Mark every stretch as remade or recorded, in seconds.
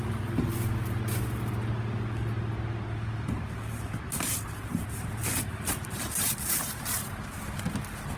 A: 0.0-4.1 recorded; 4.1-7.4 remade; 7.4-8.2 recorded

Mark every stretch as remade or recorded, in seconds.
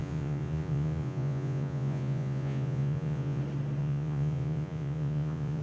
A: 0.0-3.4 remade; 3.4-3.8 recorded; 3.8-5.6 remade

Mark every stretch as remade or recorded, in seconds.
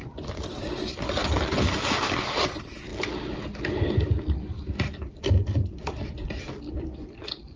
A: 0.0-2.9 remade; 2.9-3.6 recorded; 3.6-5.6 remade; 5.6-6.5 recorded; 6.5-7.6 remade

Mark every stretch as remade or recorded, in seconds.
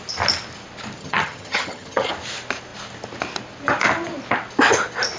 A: 0.0-1.0 recorded; 1.0-2.1 remade; 2.1-5.2 recorded